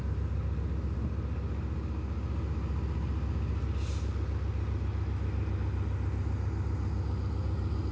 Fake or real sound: real